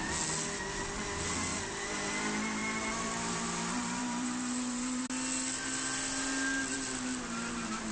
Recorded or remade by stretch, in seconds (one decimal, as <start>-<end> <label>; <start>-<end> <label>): 0.0-1.5 recorded; 1.5-2.1 remade; 2.1-2.6 recorded; 2.6-5.0 remade; 5.0-7.9 recorded